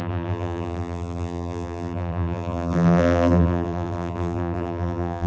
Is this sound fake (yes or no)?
yes